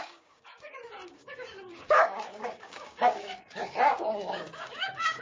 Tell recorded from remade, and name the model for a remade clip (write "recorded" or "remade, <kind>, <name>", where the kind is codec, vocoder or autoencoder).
remade, codec, DAC